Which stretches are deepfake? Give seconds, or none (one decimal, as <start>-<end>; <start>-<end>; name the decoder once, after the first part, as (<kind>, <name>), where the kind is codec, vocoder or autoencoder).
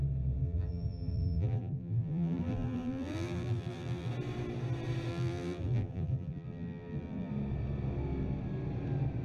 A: 0.4-4.1 (vocoder, BigVGAN v2); 5.1-7.3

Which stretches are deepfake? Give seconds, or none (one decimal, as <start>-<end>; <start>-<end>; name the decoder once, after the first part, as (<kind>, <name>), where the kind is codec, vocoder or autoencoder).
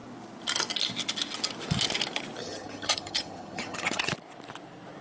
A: 2.4-4.1 (vocoder, HiFi-GAN)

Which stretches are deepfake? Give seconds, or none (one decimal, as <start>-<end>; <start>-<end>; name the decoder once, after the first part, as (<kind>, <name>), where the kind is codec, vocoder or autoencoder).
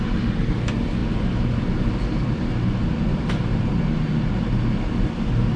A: none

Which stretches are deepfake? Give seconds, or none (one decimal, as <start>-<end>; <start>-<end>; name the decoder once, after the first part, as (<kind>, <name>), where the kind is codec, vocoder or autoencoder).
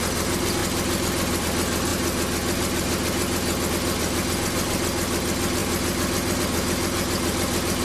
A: none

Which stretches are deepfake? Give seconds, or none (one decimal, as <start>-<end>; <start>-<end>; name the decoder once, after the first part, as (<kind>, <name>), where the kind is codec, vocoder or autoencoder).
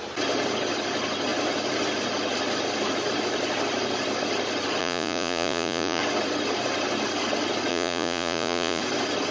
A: 4.8-6.0 (vocoder, Vocos); 7.7-8.8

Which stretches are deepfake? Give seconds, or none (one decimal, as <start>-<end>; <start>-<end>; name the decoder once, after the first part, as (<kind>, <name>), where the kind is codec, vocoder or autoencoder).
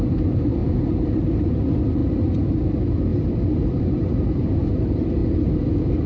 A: 0.0-5.2 (vocoder, BigVGAN v2)